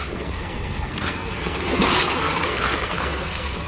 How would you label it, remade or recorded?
remade